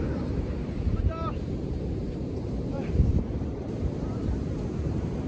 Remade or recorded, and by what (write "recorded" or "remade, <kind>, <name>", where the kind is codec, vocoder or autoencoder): remade, vocoder, BigVGAN v2